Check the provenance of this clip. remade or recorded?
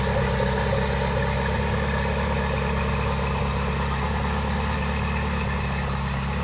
recorded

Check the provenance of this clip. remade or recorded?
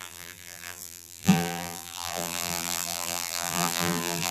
remade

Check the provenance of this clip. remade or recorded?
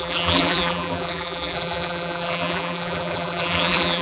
remade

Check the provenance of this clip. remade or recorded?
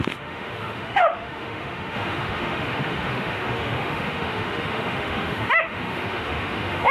remade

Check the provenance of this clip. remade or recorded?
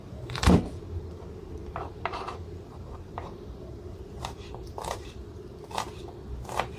remade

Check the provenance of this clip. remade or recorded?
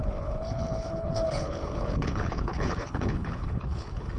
remade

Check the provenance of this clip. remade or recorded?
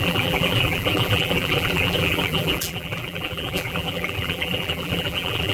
remade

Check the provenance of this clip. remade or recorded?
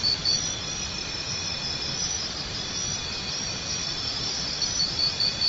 recorded